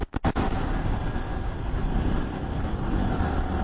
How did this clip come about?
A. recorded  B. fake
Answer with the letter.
A